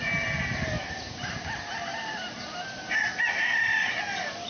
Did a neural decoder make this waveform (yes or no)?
no